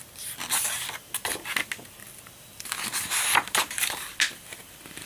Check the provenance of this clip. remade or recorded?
recorded